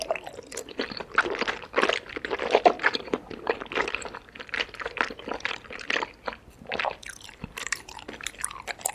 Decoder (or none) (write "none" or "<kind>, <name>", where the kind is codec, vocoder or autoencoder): vocoder, BigVGAN v2